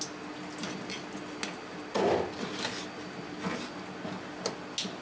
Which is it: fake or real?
real